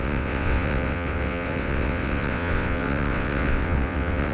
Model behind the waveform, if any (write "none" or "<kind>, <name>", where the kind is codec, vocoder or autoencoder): vocoder, WaveNeXt